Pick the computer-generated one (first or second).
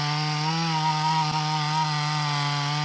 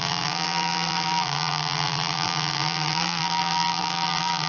second